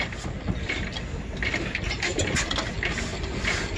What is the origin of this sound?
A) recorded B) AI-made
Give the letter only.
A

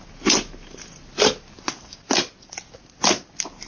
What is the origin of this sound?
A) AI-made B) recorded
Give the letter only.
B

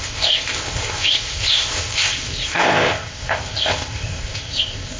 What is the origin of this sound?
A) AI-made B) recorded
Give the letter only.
A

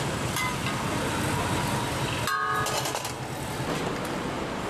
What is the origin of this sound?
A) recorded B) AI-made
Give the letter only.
A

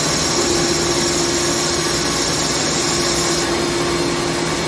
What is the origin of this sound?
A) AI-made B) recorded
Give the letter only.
B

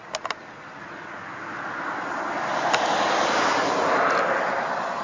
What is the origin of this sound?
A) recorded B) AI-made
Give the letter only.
A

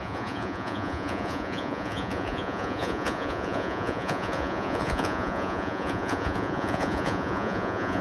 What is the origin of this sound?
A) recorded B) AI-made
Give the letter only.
B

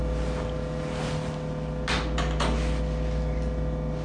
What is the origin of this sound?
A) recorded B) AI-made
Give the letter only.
A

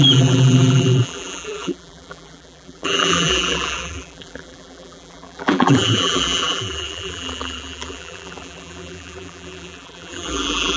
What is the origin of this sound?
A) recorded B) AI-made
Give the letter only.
B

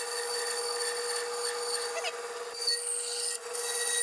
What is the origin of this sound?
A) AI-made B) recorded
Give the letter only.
B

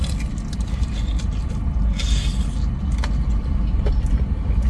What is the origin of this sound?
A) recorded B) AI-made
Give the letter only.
A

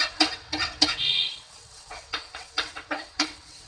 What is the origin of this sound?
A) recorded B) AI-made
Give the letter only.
B